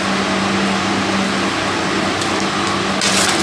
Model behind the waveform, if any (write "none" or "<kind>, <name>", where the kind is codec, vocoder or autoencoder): none